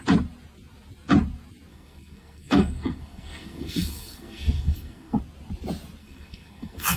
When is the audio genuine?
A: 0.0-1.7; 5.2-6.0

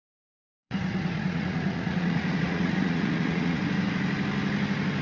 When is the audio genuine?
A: 0.0-0.6; 3.6-5.0

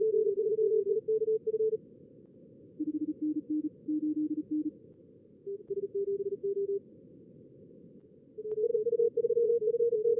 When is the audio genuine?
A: 0.0-10.2

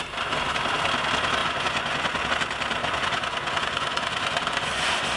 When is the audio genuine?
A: 0.0-1.4; 2.3-2.8